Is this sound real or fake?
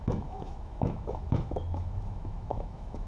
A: fake